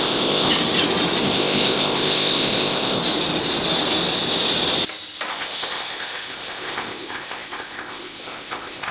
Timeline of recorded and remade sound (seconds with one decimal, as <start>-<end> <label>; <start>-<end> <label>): 0.0-0.5 remade; 0.5-1.2 recorded; 1.2-3.0 remade; 3.0-5.3 recorded; 5.3-8.9 remade